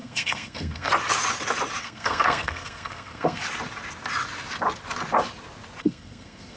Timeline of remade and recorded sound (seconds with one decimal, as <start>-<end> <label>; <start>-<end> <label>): 0.0-0.9 remade; 0.9-1.8 recorded; 1.8-3.4 remade; 3.4-5.8 recorded; 5.8-6.6 remade